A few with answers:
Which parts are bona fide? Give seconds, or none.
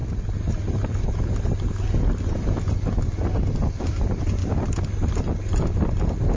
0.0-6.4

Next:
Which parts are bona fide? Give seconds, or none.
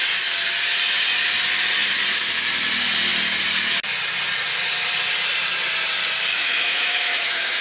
0.0-6.3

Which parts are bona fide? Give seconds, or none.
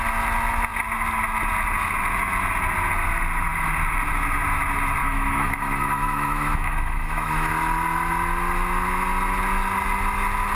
0.0-5.0; 7.5-10.5